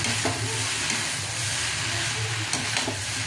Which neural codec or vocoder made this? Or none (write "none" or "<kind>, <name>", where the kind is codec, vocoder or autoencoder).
none